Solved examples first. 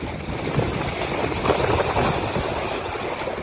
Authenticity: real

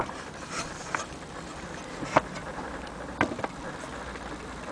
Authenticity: real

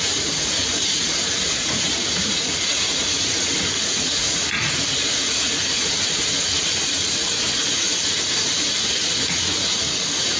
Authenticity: fake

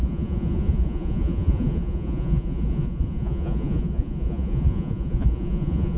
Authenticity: fake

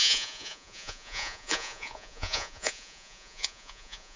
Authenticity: fake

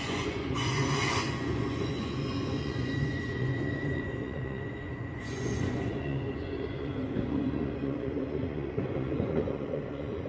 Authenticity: fake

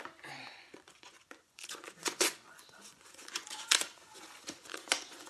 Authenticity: fake